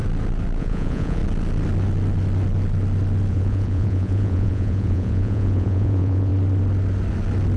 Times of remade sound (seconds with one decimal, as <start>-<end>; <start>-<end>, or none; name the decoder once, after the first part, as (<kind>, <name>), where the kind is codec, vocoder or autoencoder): 0.6-1.2 (vocoder, Vocos); 3.3-6.3